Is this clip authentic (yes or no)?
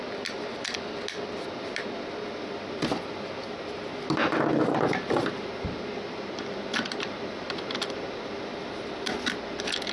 yes